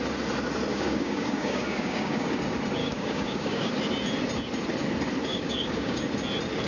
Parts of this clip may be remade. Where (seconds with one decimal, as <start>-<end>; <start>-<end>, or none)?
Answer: 0.7-2.4; 2.8-3.7; 5.3-6.0